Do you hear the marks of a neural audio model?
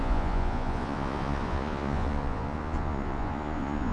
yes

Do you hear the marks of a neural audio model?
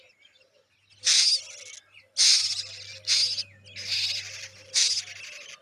no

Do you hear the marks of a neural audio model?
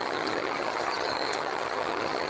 yes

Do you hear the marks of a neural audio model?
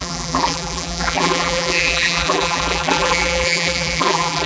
yes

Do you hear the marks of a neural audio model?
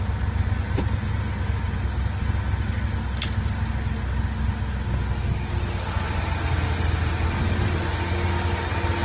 no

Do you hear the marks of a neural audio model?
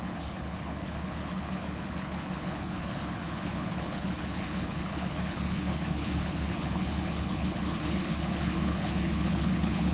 yes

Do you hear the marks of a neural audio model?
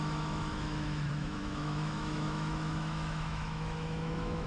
yes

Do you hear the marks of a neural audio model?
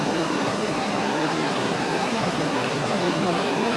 yes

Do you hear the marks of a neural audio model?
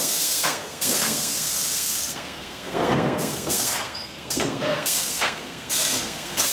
yes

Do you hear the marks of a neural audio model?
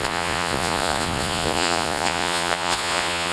yes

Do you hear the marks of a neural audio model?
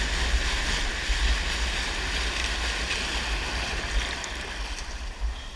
no